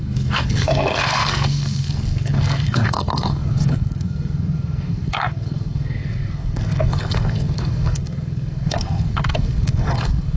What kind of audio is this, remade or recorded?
remade